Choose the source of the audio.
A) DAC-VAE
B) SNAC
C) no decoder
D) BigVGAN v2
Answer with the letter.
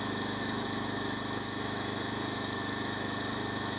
A